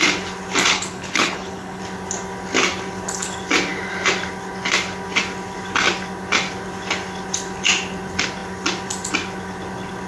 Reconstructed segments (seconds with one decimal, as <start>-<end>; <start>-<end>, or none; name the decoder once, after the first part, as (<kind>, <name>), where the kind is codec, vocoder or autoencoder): 0.7-1.8 (codec, HILCodec)